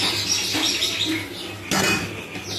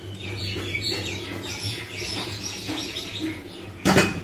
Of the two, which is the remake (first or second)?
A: second